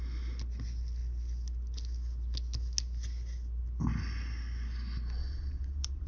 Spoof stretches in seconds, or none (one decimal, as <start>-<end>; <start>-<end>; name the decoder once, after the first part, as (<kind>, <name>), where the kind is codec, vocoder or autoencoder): 5.2-6.1 (vocoder, Vocos)